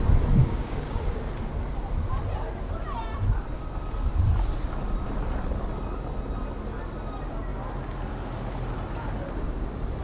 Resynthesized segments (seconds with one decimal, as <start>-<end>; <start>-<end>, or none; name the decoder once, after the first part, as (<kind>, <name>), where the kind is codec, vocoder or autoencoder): 0.4-1.0 (codec, DAC)